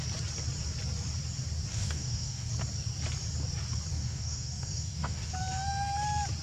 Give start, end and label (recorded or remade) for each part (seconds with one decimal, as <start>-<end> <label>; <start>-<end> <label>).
0.0-1.7 recorded; 1.7-2.5 remade; 2.5-3.9 recorded; 3.9-5.3 remade; 5.3-6.4 recorded